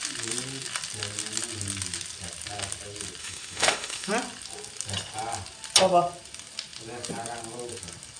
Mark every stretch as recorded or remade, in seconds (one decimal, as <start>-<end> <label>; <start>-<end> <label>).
0.0-3.2 recorded; 3.2-4.1 remade; 4.1-8.2 recorded